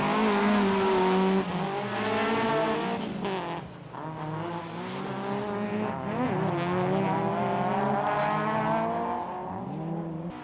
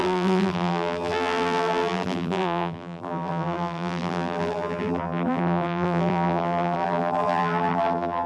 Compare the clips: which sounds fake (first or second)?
second